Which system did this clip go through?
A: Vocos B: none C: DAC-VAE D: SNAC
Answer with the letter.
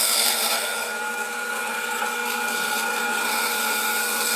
D